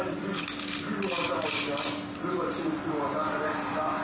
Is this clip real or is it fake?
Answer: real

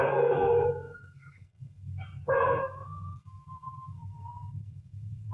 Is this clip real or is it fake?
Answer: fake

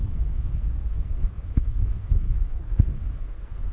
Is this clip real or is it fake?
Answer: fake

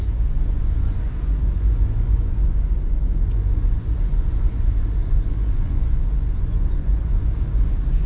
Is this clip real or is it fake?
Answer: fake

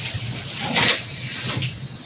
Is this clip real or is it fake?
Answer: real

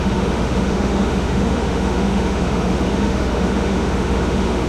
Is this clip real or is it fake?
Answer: fake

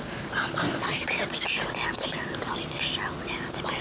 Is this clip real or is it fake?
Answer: real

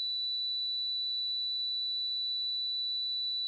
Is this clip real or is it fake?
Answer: real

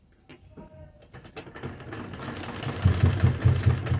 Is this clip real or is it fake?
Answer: real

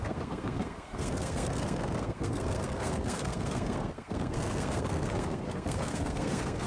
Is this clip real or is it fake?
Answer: fake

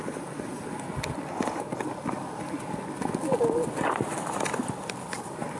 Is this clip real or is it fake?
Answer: real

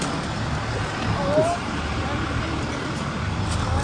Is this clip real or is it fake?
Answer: real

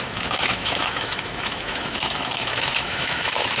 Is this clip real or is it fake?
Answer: fake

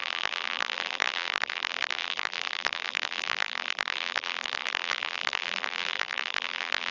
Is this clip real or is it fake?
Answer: fake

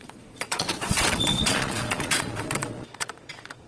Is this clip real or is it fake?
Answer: fake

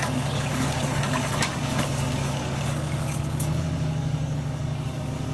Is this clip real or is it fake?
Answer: fake